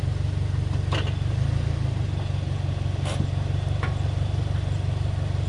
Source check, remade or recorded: recorded